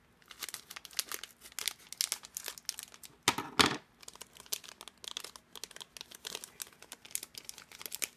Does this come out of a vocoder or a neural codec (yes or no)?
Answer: no